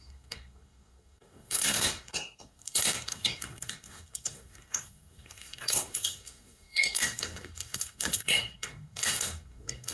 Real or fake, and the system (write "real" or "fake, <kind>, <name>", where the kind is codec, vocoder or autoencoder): fake, codec, SNAC